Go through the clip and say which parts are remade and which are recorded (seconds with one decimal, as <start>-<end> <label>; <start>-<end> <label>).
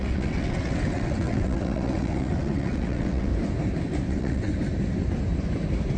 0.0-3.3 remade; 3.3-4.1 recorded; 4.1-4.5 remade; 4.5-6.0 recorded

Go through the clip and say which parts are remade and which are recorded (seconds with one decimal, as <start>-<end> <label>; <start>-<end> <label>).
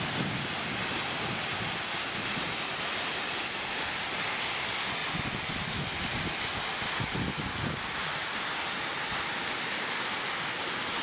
0.0-11.0 recorded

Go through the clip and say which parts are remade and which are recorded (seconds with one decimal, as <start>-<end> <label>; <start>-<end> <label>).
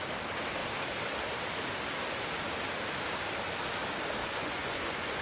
0.0-4.2 recorded; 4.2-5.2 remade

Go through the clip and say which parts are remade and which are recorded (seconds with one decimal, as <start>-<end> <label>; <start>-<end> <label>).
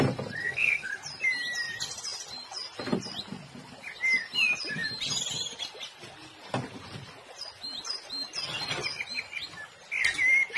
0.0-0.4 recorded; 0.4-0.9 remade; 0.9-10.6 recorded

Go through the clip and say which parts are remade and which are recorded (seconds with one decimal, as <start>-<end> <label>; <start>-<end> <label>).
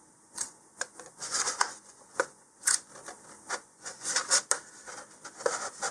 0.0-2.9 remade; 2.9-3.5 recorded; 3.5-4.2 remade; 4.2-5.9 recorded